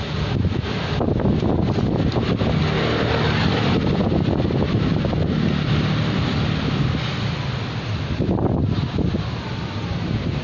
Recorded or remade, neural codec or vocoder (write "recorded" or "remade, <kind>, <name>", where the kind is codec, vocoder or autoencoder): recorded